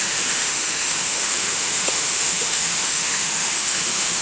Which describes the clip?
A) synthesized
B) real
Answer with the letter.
A